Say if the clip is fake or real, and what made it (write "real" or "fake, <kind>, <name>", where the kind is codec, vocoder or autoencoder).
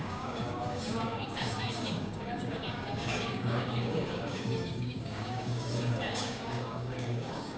fake, codec, DAC